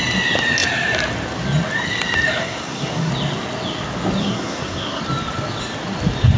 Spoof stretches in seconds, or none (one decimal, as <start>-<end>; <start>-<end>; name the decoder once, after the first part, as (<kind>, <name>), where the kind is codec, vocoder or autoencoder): 2.4-3.1 (codec, SNAC); 4.2-5.0